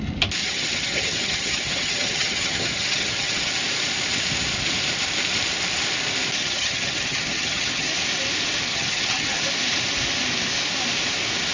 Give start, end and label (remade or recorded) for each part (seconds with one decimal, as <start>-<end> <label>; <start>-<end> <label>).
0.0-0.4 recorded; 0.4-3.5 remade; 3.5-6.4 recorded; 6.4-7.9 remade; 7.9-8.7 recorded; 8.7-9.4 remade; 9.4-11.5 recorded